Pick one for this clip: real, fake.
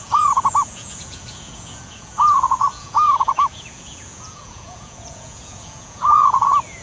fake